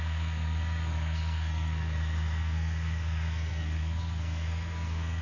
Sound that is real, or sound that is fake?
fake